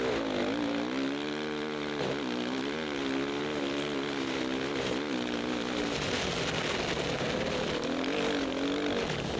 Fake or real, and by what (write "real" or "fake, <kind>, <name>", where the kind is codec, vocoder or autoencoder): real